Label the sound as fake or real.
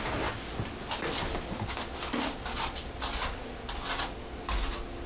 real